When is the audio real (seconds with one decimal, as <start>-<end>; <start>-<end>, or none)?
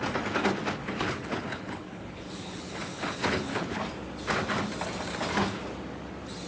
0.0-0.8; 3.8-6.5